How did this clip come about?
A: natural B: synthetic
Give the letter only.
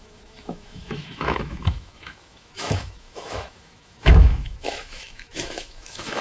B